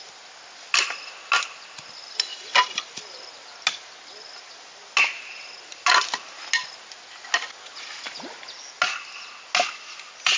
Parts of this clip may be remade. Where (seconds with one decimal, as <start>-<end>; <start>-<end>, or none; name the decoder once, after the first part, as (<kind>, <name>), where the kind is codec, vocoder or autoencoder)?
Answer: 2.3-3.0 (vocoder, BigVGAN v2)